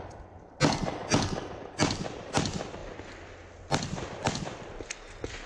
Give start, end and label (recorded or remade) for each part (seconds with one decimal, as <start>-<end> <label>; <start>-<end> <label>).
0.0-5.5 recorded

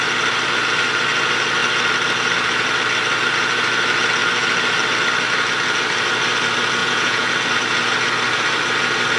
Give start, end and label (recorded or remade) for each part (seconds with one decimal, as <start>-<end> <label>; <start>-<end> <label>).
0.0-6.8 recorded; 6.8-7.3 remade; 7.3-9.2 recorded

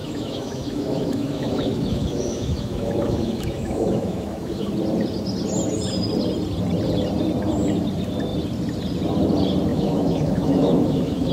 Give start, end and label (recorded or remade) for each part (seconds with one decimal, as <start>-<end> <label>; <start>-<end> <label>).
0.0-4.7 remade; 4.7-9.7 recorded; 9.7-11.3 remade